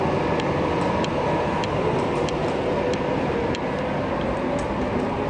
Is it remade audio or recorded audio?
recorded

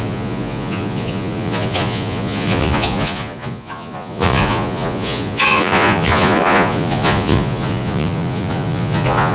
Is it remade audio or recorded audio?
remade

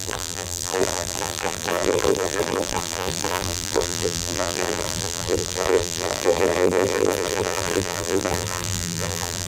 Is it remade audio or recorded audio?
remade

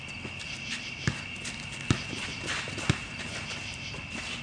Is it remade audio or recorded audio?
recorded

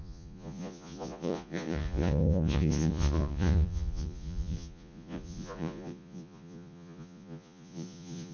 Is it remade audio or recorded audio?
remade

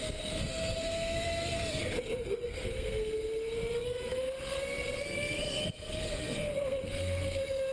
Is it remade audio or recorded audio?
remade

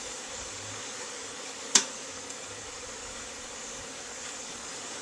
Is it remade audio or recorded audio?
remade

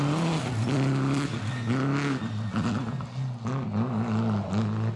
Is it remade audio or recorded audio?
recorded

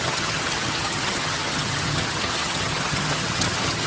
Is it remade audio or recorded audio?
remade